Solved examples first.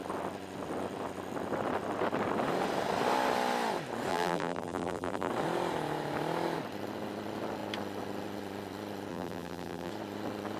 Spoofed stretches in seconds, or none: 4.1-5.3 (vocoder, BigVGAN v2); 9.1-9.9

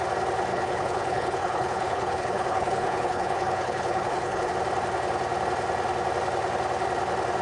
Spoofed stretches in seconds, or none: 0.5-4.5 (codec, HILCodec)

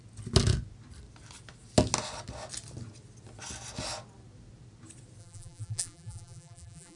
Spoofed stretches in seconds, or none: 5.2-7.0 (vocoder, BigVGAN v2)

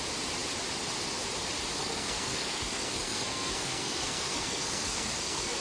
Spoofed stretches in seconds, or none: 1.8-5.6 (codec, SNAC)

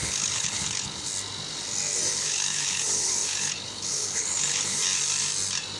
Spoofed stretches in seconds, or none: 0.0-1.1 (codec, HILCodec); 2.1-4.8